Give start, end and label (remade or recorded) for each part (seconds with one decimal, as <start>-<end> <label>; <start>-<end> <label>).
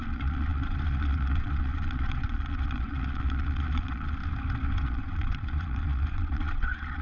0.0-4.2 remade; 4.2-4.8 recorded; 4.8-7.0 remade